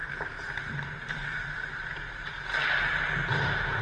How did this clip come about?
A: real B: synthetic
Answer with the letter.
A